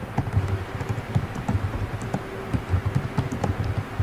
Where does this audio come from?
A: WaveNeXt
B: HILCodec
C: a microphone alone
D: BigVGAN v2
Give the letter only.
C